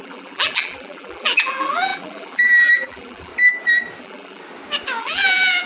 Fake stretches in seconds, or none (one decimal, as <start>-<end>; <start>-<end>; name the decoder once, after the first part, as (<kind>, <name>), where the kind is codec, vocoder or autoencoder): 0.0-3.3 (vocoder, BigVGAN v2); 4.0-4.4; 5.0-5.7